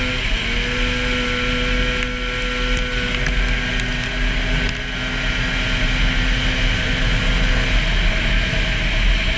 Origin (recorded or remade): recorded